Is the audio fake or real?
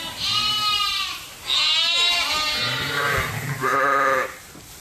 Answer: real